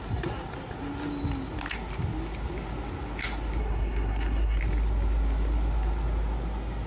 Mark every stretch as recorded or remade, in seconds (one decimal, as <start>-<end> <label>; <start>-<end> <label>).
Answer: 0.0-3.6 recorded; 3.6-4.6 remade; 4.6-6.9 recorded